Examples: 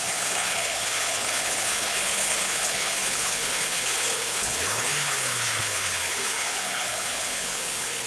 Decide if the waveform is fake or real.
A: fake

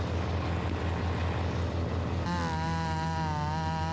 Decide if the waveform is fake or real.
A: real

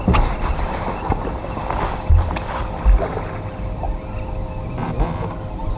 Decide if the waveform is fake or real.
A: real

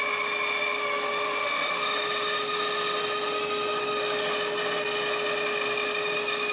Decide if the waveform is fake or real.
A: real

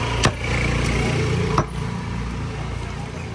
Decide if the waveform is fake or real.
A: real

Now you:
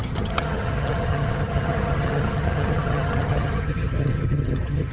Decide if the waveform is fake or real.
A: fake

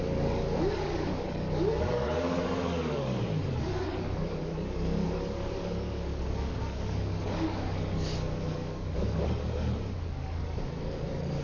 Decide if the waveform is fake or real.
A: fake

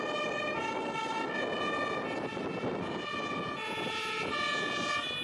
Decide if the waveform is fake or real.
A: real